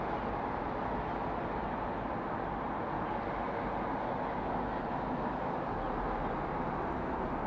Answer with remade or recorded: recorded